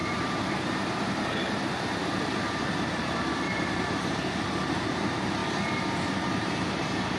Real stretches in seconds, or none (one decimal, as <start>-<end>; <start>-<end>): none